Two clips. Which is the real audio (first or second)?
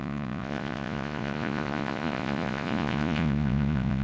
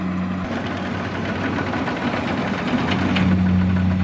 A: second